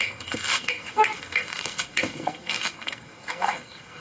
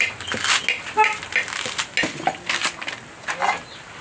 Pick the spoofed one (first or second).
first